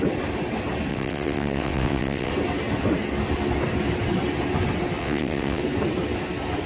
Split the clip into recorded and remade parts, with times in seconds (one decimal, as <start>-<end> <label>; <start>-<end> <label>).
0.0-0.9 recorded; 0.9-2.3 remade; 2.3-5.0 recorded; 5.0-5.6 remade; 5.6-6.7 recorded

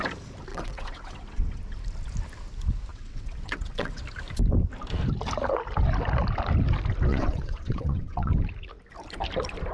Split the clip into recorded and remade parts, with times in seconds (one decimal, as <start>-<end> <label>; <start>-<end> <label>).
0.0-0.5 recorded; 0.5-1.6 remade; 1.6-2.9 recorded; 2.9-4.0 remade; 4.0-7.1 recorded; 7.1-8.3 remade; 8.3-9.7 recorded

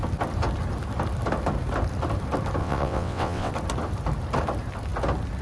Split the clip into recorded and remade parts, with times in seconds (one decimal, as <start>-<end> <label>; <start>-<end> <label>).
0.0-2.6 recorded; 2.6-3.5 remade; 3.5-5.4 recorded

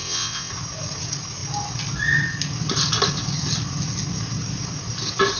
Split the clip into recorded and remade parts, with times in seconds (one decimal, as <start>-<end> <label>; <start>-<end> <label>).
0.0-0.5 remade; 0.5-5.4 recorded

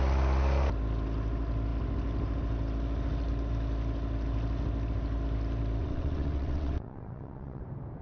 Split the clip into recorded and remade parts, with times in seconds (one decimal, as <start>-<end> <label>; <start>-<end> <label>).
0.0-5.8 recorded; 5.8-7.6 remade; 7.6-8.0 recorded

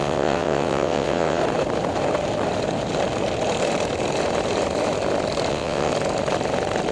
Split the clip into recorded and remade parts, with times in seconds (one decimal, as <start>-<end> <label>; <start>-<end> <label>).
0.0-1.4 remade; 1.4-5.5 recorded; 5.5-5.9 remade; 5.9-6.9 recorded

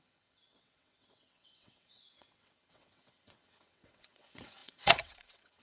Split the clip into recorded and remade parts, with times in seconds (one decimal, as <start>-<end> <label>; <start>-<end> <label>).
0.0-5.6 remade